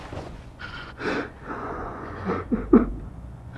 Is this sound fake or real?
fake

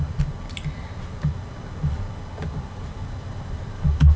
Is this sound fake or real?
real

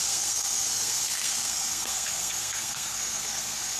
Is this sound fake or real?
fake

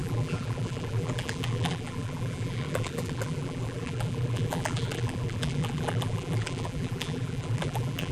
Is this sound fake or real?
fake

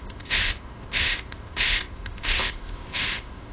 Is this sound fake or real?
fake